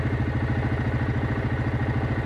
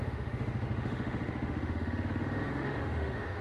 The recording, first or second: first